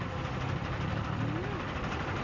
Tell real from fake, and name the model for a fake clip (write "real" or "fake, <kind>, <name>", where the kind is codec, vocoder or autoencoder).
real